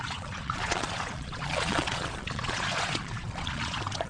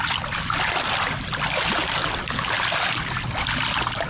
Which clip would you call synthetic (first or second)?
first